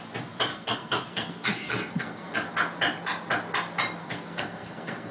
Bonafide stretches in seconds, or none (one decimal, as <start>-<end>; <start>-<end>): 0.0-0.5; 2.5-4.0